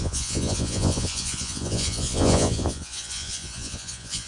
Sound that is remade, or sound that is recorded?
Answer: remade